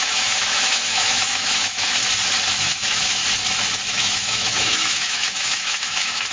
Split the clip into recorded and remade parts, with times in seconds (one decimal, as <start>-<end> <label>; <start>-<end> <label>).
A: 0.0-2.0 remade; 2.0-2.6 recorded; 2.6-3.2 remade; 3.2-3.9 recorded; 3.9-6.3 remade